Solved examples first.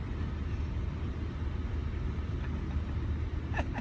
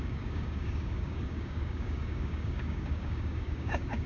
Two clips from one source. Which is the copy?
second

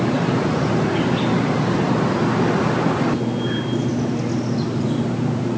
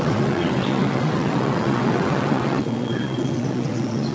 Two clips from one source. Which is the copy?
second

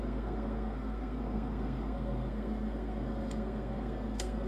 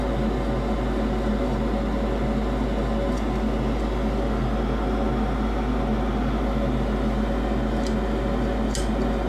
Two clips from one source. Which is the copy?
first